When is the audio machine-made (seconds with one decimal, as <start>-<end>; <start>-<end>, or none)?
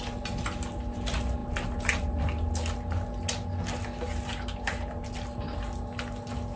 none